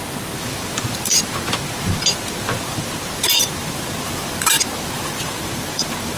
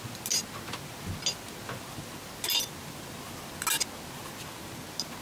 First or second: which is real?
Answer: second